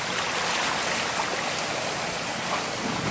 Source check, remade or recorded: recorded